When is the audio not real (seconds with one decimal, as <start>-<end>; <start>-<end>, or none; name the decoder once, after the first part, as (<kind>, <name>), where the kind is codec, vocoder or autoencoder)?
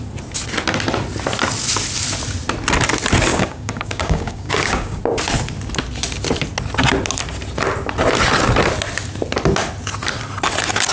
3.3-5.0 (codec, DAC)